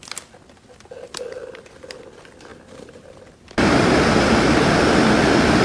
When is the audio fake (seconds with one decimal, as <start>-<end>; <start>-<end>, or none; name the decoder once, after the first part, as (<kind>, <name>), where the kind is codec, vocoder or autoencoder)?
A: 2.5-5.6 (vocoder, BigVGAN v2)

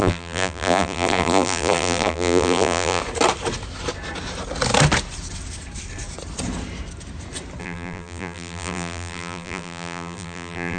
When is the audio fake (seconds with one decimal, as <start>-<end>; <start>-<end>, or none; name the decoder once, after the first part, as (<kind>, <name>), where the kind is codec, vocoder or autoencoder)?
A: 0.0-3.0 (vocoder, BigVGAN v2); 7.6-10.8